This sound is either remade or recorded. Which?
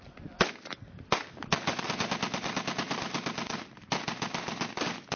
recorded